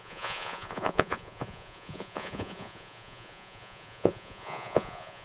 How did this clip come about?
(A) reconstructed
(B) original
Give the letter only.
A